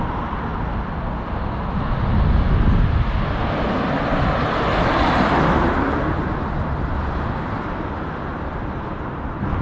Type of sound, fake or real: real